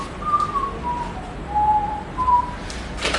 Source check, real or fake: real